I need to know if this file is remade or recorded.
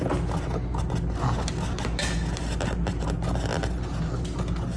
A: recorded